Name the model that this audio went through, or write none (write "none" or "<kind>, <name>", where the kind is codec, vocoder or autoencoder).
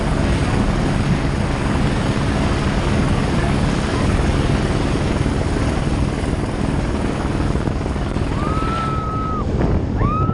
codec, DAC